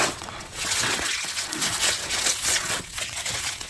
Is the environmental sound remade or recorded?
remade